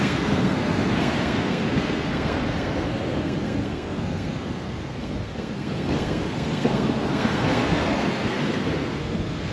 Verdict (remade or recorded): remade